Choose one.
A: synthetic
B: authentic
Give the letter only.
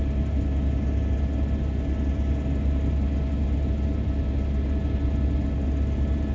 B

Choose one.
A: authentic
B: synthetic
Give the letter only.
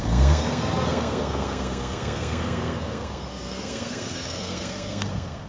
B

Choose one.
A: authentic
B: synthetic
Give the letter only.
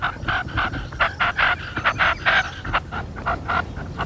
A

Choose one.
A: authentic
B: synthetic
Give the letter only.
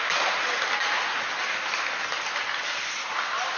A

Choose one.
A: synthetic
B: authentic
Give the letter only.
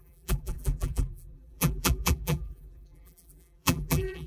A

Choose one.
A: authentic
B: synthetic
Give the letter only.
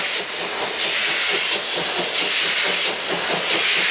A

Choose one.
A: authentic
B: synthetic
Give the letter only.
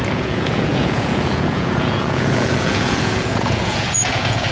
B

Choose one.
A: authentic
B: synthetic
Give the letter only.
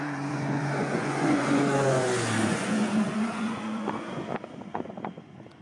B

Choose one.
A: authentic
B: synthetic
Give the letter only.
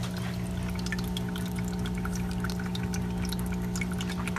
A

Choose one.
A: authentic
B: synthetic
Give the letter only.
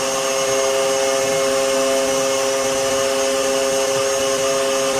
A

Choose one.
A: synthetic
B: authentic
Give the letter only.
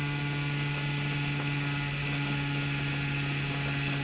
B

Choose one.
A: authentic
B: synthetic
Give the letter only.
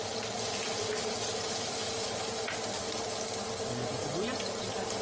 A